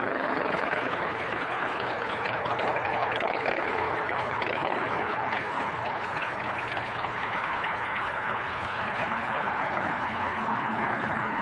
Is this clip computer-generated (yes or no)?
yes